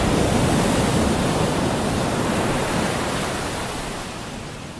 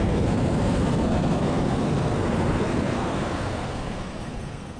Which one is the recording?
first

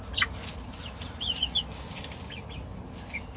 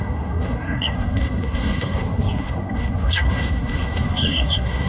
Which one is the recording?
first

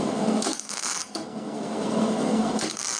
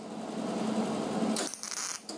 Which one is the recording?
second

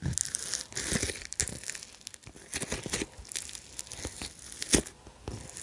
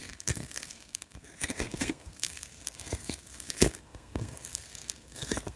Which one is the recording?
first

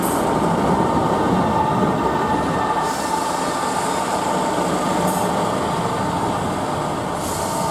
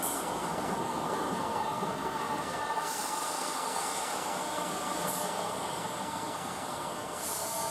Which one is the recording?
first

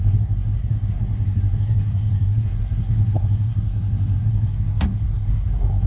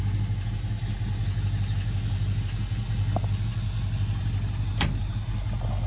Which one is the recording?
second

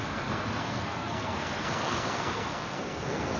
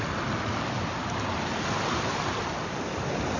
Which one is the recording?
second